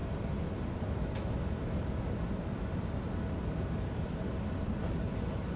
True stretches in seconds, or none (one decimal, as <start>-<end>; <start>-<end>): 0.0-5.6